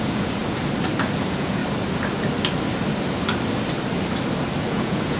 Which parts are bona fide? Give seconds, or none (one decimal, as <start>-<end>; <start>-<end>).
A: 0.4-1.2; 1.6-4.6